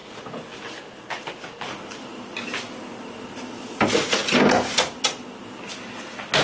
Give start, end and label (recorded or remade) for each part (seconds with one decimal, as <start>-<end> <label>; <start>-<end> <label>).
0.0-6.4 recorded